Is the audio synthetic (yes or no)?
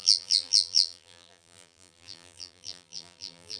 yes